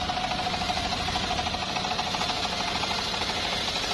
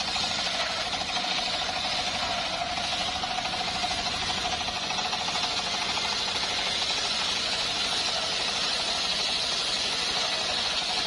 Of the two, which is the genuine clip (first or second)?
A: first